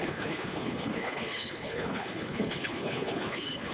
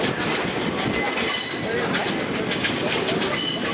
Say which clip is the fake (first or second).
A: first